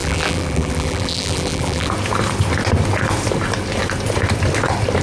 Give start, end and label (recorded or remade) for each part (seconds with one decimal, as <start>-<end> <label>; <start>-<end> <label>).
0.0-1.9 remade; 1.9-5.0 recorded